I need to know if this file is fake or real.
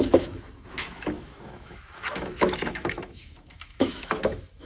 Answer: fake